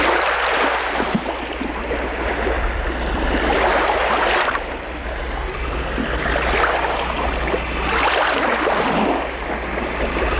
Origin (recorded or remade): recorded